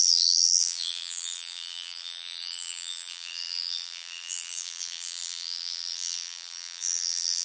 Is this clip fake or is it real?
fake